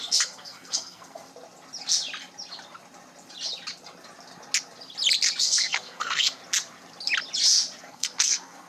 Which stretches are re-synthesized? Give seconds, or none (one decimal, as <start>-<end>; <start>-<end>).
0.0-1.3; 5.4-6.4; 7.8-8.7